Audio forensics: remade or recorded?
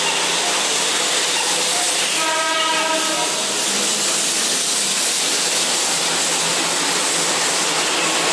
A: recorded